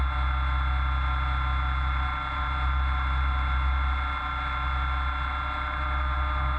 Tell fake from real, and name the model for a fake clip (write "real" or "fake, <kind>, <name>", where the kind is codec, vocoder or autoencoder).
real